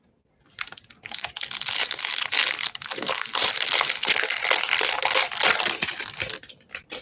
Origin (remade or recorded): recorded